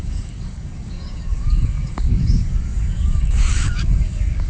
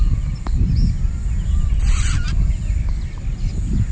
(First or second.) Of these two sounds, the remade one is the first